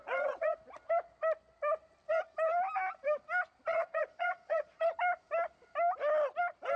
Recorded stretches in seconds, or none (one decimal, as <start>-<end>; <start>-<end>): 0.6-3.7; 4.8-6.8